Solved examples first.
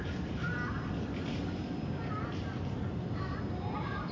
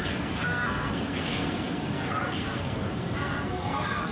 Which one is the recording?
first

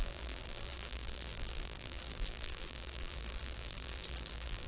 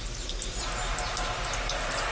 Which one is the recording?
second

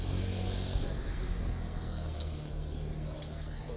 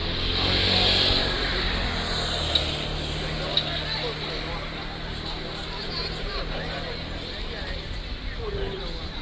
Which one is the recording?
second